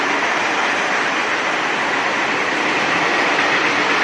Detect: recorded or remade recorded